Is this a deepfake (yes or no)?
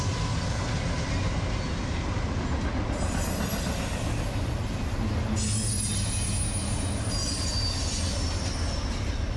no